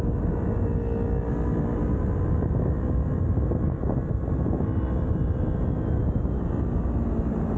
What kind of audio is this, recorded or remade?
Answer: recorded